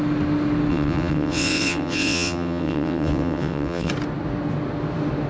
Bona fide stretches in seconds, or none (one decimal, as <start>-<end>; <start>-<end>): 0.0-0.7; 3.9-5.3